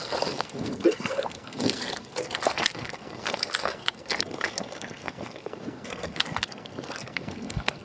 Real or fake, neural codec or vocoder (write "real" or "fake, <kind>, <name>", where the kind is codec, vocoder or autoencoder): fake, codec, SNAC